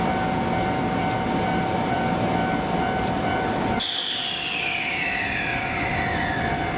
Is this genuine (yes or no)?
yes